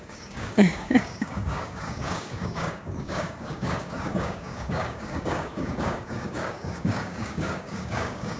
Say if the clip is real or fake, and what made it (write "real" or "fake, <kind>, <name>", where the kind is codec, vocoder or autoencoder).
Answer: fake, codec, DAC